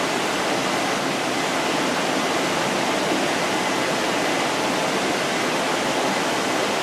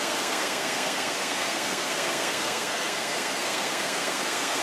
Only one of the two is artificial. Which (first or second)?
second